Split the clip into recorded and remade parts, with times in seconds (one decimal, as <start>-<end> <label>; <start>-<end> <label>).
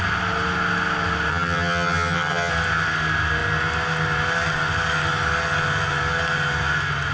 0.0-1.3 recorded; 1.3-2.5 remade; 2.5-7.1 recorded